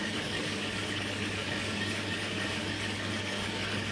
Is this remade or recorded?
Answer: remade